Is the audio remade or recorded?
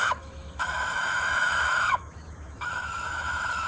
remade